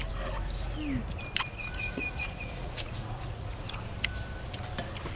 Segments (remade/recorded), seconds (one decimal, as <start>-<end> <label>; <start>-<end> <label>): 0.0-1.5 recorded; 1.5-3.8 remade; 3.8-5.2 recorded